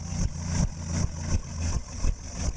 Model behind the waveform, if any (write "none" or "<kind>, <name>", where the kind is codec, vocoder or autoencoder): none